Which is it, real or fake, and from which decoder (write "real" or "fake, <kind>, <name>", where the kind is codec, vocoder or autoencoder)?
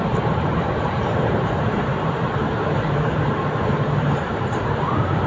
fake, vocoder, BigVGAN v2